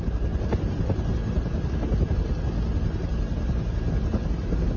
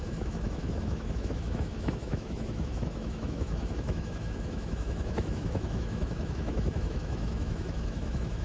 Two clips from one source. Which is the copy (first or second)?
second